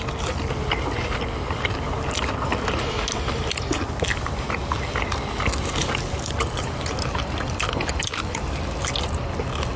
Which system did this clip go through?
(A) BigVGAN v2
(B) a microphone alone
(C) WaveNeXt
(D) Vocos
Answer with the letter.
B